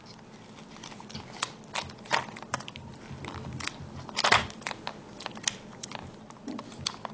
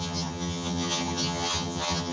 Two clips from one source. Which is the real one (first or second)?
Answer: first